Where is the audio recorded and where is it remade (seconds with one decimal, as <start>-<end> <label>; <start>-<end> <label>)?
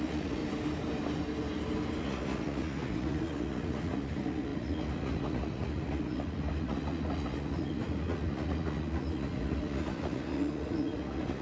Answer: 0.0-0.4 remade; 0.4-2.0 recorded; 2.0-11.4 remade